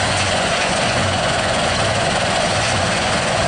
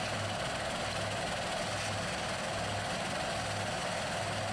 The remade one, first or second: first